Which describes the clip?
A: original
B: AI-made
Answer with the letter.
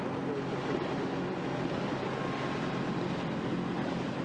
A